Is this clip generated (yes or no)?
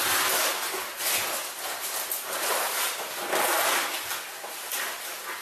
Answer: no